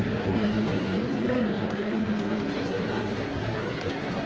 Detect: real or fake fake